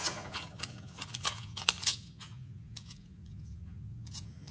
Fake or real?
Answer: fake